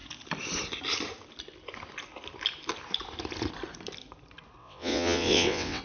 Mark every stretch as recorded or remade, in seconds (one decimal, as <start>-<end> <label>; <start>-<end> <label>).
0.0-4.6 recorded; 4.6-5.8 remade